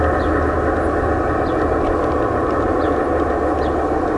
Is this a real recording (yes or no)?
yes